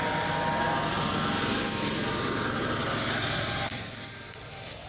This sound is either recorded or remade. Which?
recorded